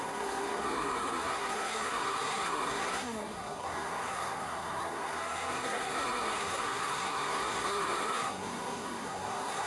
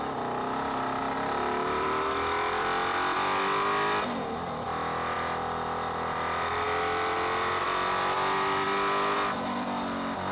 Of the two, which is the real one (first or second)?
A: second